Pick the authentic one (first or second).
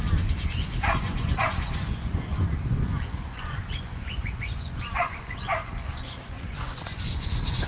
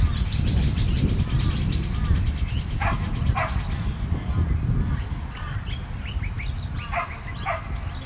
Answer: second